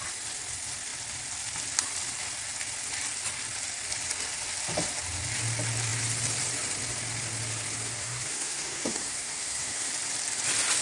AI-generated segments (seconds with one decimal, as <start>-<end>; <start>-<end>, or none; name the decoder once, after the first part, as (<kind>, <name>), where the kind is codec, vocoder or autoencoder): 8.0-9.9 (codec, SNAC)